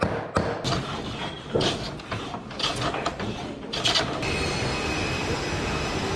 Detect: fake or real real